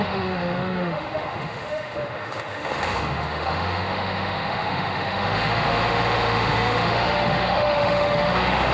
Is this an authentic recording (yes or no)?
no